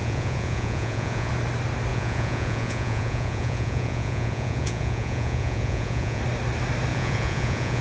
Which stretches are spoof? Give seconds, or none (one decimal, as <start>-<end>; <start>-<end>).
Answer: 0.0-1.3; 1.9-6.2; 6.9-7.8